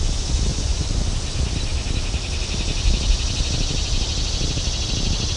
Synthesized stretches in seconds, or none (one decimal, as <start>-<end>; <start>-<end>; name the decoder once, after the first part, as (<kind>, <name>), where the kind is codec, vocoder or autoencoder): 0.5-1.1 (vocoder, Vocos)